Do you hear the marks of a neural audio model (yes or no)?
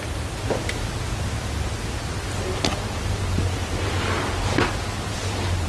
no